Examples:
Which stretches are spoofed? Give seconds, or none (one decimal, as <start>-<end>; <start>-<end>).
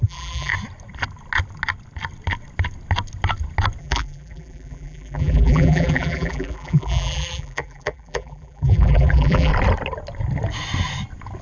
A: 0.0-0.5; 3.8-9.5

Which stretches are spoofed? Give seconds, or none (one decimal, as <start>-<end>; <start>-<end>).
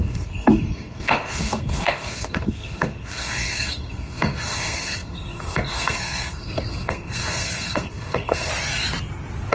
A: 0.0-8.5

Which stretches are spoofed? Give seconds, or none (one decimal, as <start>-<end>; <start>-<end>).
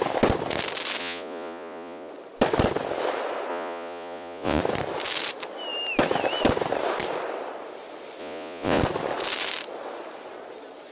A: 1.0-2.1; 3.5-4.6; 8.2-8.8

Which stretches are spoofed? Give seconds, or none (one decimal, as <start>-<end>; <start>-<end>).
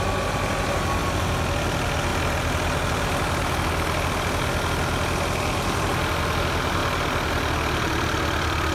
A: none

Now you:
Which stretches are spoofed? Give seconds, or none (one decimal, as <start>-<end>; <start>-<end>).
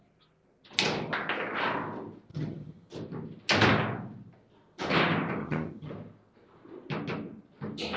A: 2.3-2.9; 5.4-5.9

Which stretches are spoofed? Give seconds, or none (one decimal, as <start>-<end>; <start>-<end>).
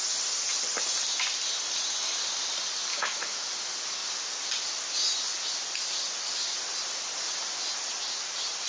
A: 2.9-3.5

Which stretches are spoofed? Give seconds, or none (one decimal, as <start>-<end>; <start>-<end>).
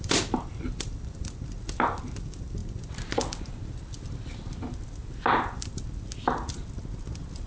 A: none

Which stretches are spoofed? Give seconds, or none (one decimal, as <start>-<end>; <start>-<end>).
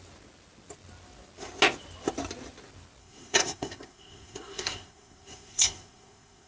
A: 3.0-6.5